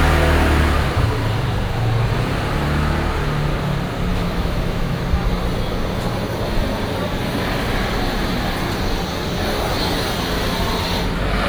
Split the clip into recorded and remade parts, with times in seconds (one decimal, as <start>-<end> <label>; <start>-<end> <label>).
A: 0.0-4.1 recorded; 4.1-5.0 remade; 5.0-11.5 recorded